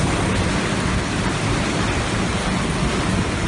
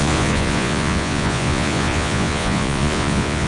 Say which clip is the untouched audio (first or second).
first